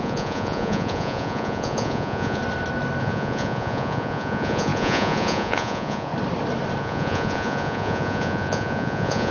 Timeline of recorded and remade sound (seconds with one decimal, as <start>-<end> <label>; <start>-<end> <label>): 0.0-2.4 remade; 2.4-3.0 recorded; 3.0-6.1 remade; 6.1-6.8 recorded; 6.8-9.3 remade